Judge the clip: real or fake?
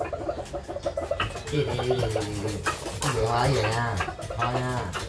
real